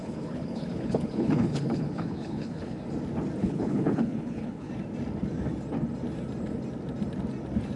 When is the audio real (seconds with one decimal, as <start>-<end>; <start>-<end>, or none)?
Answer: 2.8-3.4; 4.7-7.8